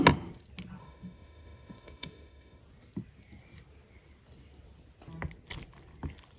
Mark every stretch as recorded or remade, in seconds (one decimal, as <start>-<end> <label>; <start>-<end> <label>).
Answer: 0.0-0.8 recorded; 0.8-2.6 remade; 2.6-6.4 recorded